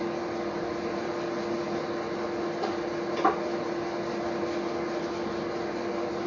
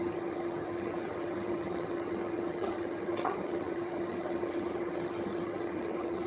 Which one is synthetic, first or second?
second